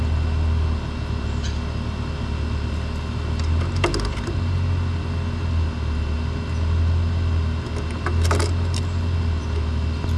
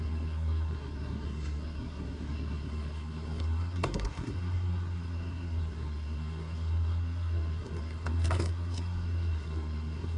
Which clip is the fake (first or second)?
second